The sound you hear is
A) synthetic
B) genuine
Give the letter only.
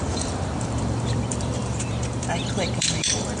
A